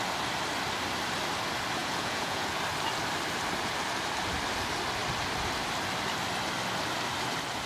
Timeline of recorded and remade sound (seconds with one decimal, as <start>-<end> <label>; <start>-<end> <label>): 0.0-1.8 recorded; 1.8-2.6 remade; 2.6-7.7 recorded